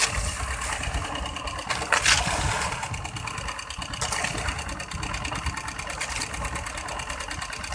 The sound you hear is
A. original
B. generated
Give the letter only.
A